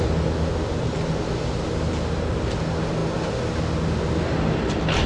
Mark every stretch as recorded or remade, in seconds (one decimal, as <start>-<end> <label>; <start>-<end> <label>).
0.0-5.1 recorded